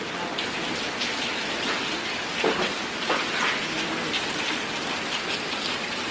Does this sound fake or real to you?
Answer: real